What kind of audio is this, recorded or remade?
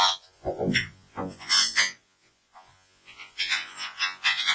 remade